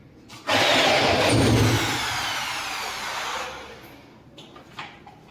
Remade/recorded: recorded